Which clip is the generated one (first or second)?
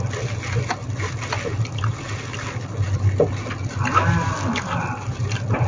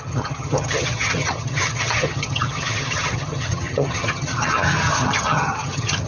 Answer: second